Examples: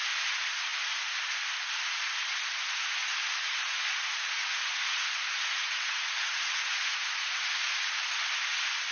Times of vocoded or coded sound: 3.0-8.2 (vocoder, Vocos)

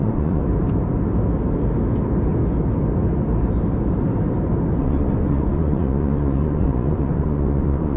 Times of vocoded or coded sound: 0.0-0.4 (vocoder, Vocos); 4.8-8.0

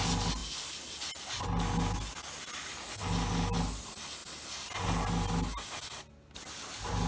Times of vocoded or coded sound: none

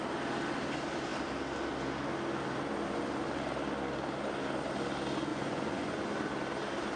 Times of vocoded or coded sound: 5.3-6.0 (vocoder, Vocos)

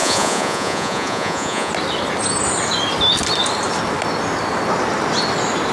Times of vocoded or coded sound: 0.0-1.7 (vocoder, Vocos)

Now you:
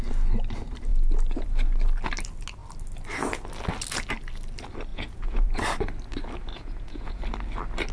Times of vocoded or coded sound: 4.9-5.6 (vocoder, Vocos); 6.5-7.2

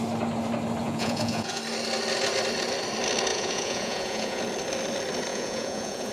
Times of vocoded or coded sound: 0.8-1.6 (vocoder, Vocos); 3.3-4.4; 5.3-6.1